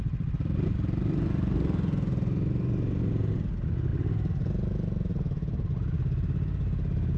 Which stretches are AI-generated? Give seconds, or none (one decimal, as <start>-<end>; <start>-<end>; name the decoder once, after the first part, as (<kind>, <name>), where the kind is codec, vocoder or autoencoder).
none